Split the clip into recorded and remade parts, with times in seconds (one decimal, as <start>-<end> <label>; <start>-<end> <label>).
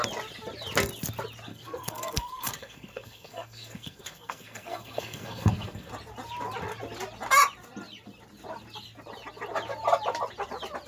0.0-1.5 recorded; 1.5-5.9 remade; 5.9-10.9 recorded